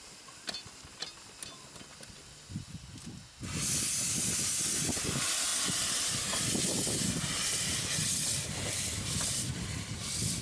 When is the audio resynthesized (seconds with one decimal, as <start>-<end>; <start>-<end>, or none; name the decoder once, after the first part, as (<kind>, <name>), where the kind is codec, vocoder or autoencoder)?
none